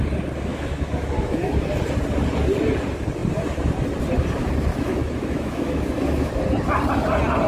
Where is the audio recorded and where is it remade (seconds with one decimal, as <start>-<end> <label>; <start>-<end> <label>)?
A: 0.0-0.5 recorded; 0.5-1.6 remade; 1.6-4.7 recorded; 4.7-6.3 remade; 6.3-7.5 recorded